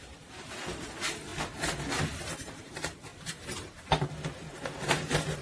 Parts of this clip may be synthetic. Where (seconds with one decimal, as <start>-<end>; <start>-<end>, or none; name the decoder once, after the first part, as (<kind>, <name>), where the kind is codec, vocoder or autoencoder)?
0.0-1.3 (vocoder, BigVGAN v2); 2.0-3.1; 4.5-5.4